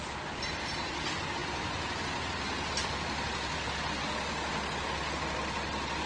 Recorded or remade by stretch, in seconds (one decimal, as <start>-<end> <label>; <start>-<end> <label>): 0.0-6.1 recorded